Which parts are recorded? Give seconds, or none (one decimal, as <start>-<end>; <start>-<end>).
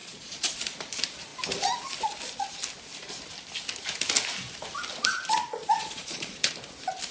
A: 0.6-5.6; 6.5-7.1